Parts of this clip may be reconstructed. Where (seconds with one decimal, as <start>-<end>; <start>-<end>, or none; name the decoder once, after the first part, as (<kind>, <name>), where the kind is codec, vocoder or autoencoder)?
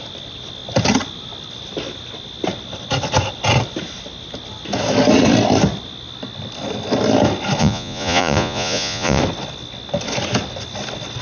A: 7.6-9.2 (vocoder, Vocos)